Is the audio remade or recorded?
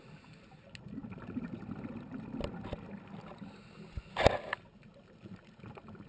recorded